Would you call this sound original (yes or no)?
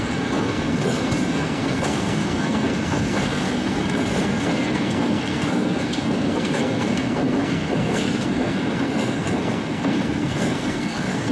no